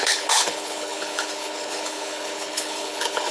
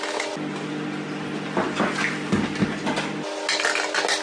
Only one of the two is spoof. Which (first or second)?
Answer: first